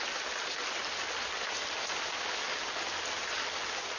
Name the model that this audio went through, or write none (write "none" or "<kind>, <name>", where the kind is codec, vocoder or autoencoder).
none